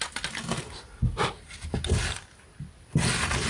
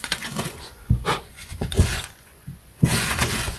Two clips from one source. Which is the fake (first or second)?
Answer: second